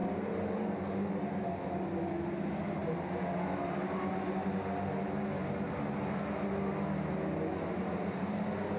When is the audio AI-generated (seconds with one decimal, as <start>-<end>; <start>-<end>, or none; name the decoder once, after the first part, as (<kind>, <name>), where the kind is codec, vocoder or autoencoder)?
none